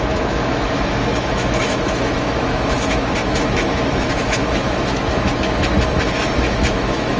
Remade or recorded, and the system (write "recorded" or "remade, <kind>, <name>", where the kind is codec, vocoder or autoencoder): remade, autoencoder, DAC-VAE